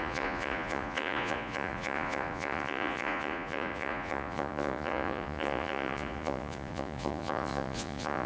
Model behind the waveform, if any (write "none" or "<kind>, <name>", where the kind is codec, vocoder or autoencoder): vocoder, Vocos